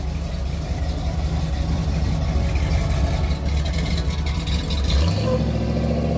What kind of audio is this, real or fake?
real